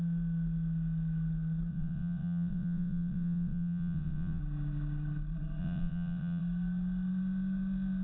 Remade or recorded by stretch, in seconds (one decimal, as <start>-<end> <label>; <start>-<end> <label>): 0.0-1.7 recorded; 1.7-4.4 remade; 4.4-5.6 recorded; 5.6-6.4 remade; 6.4-8.0 recorded

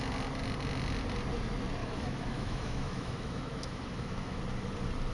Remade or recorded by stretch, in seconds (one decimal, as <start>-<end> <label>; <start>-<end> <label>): 0.0-1.8 recorded; 1.8-4.4 remade; 4.4-5.1 recorded

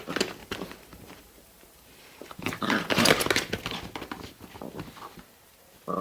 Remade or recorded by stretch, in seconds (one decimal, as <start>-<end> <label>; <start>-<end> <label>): 0.0-0.4 recorded; 0.4-3.1 remade; 3.1-6.0 recorded

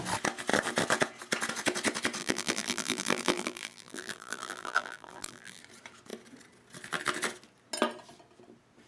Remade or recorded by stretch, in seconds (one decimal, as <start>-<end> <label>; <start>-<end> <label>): 0.0-2.2 recorded; 2.2-5.6 remade; 5.6-8.9 recorded

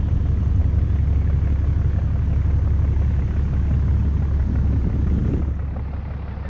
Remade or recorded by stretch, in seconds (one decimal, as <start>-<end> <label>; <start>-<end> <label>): 0.0-6.5 recorded

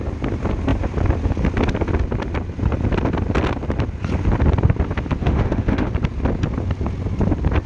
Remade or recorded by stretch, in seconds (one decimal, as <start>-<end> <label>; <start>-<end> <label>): 0.0-5.2 recorded; 5.2-5.9 remade; 5.9-7.7 recorded

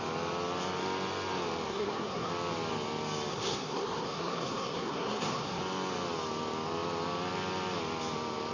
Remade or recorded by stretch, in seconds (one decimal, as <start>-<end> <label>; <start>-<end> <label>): 0.0-1.7 recorded; 1.7-2.3 remade; 2.3-3.3 recorded; 3.3-5.6 remade; 5.6-8.5 recorded

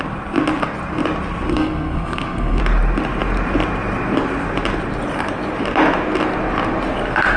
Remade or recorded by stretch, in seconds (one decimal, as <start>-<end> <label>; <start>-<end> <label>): 0.0-1.5 recorded; 1.5-2.6 remade; 2.6-7.4 recorded